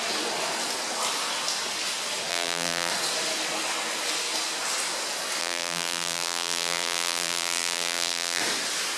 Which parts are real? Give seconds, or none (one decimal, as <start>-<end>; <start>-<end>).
0.0-2.3; 2.9-5.4; 8.4-9.0